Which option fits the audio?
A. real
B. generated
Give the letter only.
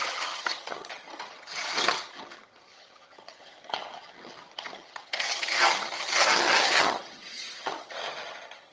B